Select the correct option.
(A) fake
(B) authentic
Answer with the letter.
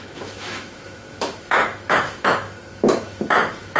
A